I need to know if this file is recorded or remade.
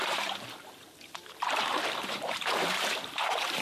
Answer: remade